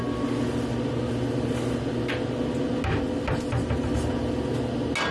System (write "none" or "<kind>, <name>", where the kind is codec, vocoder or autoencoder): none